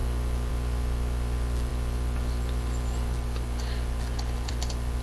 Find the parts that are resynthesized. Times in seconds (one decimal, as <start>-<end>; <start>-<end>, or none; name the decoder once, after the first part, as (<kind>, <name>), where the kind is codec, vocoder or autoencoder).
none